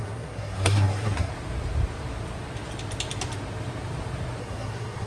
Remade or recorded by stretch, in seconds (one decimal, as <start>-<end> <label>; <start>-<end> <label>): 0.0-1.3 remade; 1.3-4.4 recorded; 4.4-5.1 remade